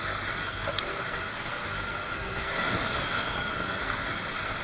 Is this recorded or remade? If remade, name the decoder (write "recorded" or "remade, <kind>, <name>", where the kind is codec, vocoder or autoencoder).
remade, codec, SNAC